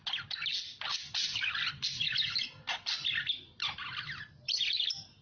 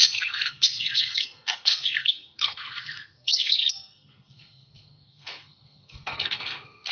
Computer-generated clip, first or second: second